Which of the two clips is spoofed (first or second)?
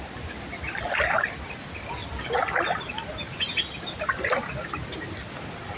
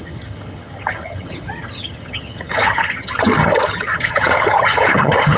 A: second